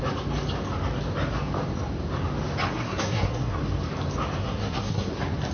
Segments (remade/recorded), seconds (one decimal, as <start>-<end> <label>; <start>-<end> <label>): 0.0-2.7 recorded; 2.7-3.6 remade; 3.6-4.4 recorded; 4.4-5.1 remade; 5.1-5.5 recorded